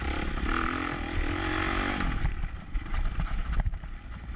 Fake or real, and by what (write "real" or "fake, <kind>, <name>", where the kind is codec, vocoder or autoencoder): real